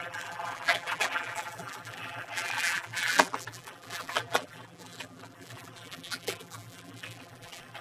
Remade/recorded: remade